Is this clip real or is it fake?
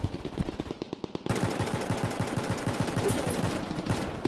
real